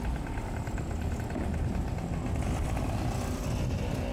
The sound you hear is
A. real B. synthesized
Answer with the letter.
A